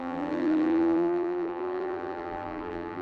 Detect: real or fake fake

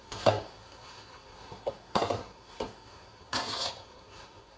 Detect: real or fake fake